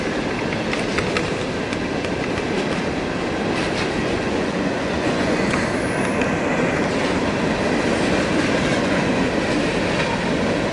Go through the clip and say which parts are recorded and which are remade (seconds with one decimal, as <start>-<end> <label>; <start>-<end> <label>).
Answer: 0.0-4.0 recorded; 4.0-5.6 remade; 5.6-8.7 recorded; 8.7-9.3 remade; 9.3-10.7 recorded